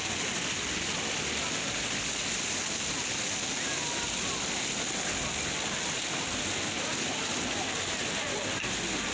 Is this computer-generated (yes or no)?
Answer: no